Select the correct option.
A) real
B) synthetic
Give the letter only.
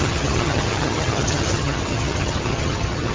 B